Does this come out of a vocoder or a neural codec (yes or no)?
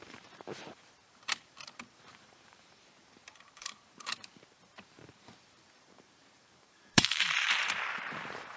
yes